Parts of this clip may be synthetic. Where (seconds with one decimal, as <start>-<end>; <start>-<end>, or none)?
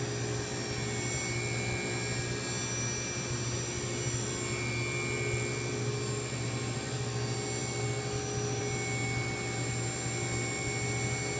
none